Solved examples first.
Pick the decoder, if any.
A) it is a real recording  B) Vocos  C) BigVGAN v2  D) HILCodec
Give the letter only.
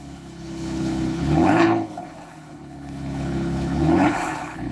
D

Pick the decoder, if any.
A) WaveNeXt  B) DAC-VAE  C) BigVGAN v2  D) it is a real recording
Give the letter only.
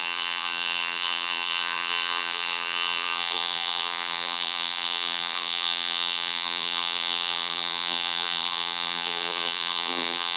C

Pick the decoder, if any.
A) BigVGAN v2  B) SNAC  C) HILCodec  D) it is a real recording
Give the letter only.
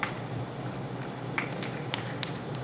A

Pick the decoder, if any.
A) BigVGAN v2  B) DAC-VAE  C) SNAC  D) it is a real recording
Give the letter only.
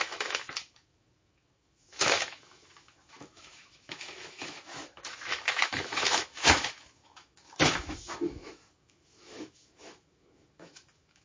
B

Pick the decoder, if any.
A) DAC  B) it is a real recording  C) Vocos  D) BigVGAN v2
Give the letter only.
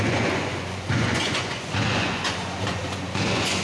C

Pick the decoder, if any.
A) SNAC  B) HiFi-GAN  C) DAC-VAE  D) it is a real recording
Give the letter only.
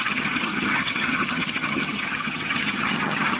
B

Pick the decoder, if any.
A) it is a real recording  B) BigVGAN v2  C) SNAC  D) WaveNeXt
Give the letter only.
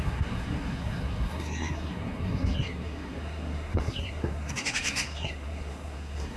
C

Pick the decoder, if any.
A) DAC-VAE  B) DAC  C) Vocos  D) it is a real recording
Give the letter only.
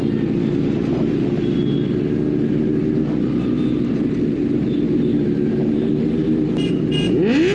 D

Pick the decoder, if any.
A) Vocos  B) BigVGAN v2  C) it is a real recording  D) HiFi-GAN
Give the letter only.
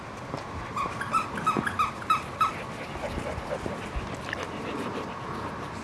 C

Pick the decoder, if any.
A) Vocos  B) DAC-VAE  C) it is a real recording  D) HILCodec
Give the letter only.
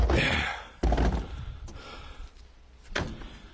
C